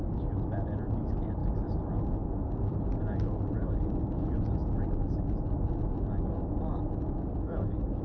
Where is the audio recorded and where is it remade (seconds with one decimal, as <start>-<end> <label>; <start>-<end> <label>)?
0.0-8.0 recorded